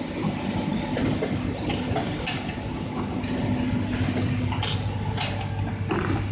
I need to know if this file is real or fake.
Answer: real